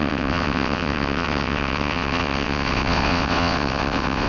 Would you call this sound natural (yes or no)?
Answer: no